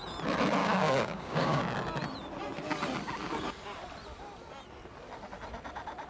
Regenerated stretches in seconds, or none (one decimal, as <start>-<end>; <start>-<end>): 0.6-1.6